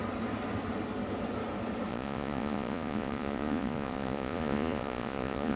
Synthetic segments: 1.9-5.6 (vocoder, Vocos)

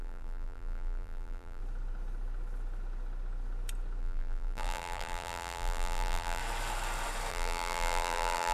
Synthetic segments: 0.0-1.6 (vocoder, BigVGAN v2); 4.0-6.4; 7.3-8.5

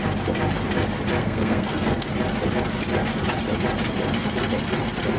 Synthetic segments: 1.2-2.1 (codec, SNAC)

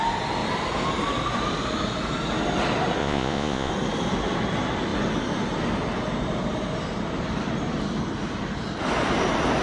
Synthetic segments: 3.0-3.7 (vocoder, Vocos)

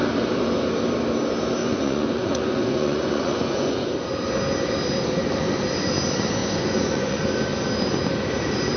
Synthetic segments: 1.6-3.9 (vocoder, Vocos); 6.4-7.2

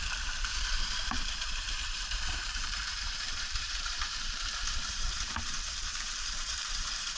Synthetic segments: 0.0-0.5 (vocoder, BigVGAN v2); 1.1-7.2